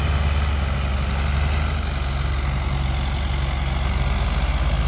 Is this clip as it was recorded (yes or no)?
yes